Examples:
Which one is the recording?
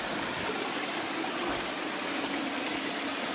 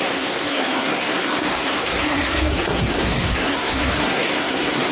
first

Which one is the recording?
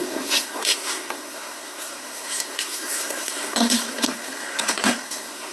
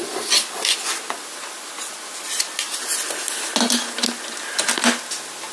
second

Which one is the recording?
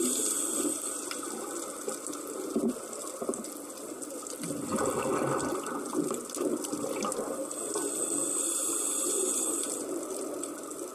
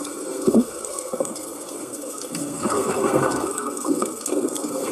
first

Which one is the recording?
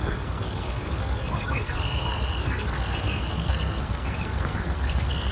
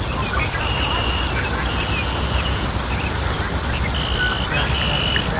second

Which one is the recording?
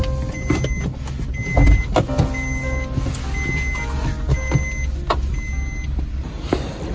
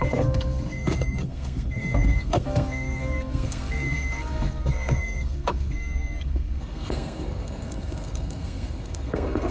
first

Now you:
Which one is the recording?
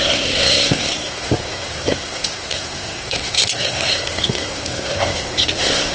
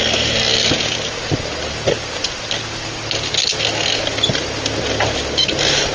second